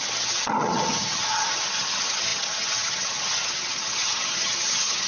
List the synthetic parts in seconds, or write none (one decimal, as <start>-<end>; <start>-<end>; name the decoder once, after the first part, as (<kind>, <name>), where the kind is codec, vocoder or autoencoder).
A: 0.0-5.1 (vocoder, HiFi-GAN)